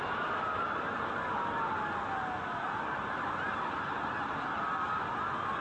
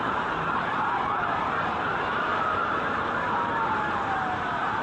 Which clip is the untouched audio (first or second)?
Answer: first